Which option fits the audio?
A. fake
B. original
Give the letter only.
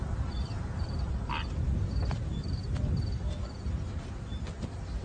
B